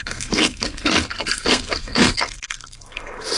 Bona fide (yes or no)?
no